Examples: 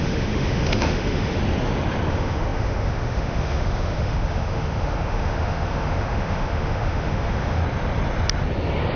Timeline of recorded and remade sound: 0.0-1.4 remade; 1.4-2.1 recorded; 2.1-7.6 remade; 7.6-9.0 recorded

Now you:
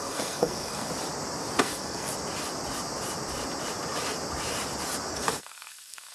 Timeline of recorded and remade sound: 0.0-0.9 remade; 0.9-1.6 recorded; 1.6-2.1 remade; 2.1-5.1 recorded; 5.1-6.1 remade